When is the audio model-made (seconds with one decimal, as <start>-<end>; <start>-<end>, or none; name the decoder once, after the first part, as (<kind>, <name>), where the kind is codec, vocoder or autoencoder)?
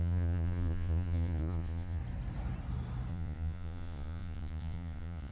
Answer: 0.0-2.0 (vocoder, Vocos); 3.1-5.3